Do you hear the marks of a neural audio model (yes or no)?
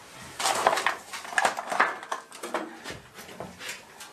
no